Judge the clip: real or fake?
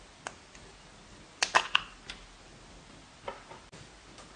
real